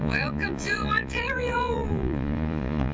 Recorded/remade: remade